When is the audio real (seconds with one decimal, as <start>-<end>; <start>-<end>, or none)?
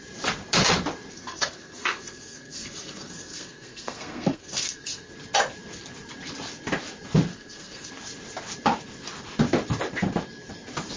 0.0-1.1; 5.1-7.3; 7.9-11.0